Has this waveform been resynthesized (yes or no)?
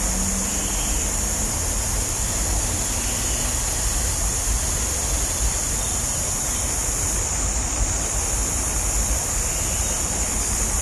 no